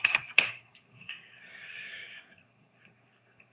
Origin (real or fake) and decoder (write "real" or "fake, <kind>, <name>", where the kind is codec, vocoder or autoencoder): fake, codec, SNAC